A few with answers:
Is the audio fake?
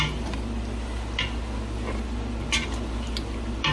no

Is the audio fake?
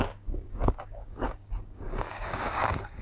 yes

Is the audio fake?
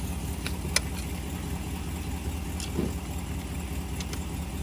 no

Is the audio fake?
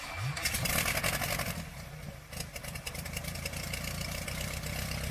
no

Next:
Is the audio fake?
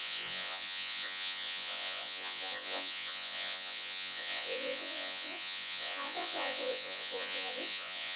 yes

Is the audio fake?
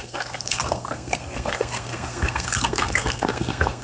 yes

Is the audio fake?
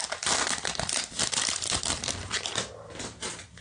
no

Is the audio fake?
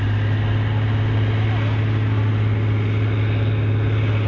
no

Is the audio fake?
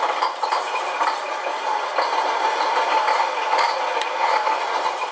no